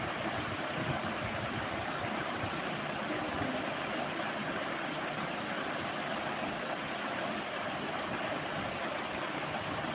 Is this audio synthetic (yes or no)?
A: no